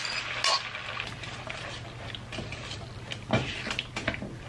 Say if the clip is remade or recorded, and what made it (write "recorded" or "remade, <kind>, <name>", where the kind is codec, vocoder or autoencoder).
recorded